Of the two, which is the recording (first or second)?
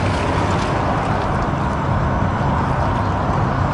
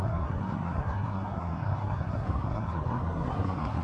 first